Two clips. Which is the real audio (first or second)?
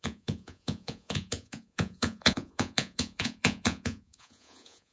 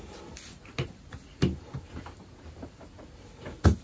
second